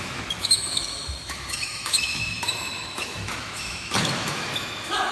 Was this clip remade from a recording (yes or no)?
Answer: yes